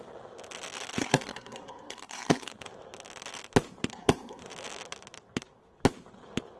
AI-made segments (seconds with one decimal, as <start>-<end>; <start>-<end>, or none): 1.0-2.5; 3.9-4.4